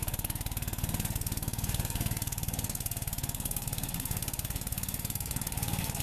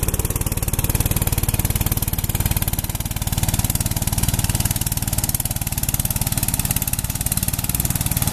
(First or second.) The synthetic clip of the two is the first